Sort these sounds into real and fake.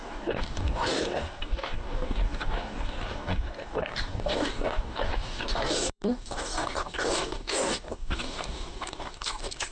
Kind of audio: fake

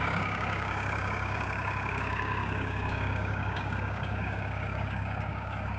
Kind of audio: fake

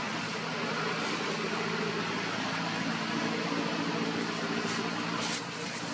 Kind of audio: real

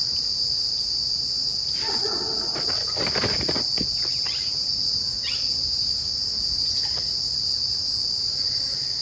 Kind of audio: real